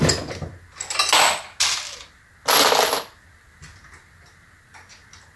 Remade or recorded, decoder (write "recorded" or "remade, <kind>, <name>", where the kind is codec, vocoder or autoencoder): recorded